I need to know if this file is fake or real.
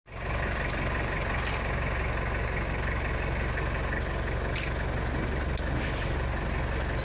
real